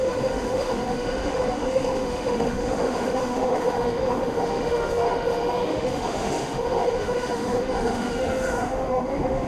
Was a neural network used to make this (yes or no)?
yes